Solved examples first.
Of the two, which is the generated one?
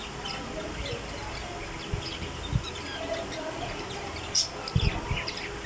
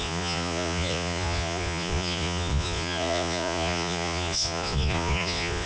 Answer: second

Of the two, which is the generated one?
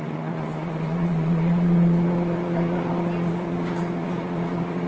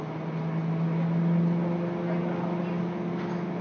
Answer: first